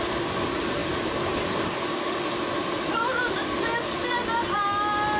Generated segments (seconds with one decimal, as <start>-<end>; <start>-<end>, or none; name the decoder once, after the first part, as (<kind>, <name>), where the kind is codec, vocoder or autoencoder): none